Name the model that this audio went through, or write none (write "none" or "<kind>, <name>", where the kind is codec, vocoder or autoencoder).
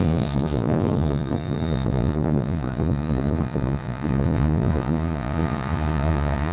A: vocoder, Vocos